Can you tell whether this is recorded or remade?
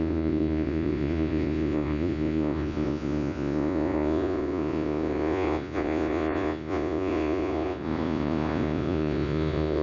remade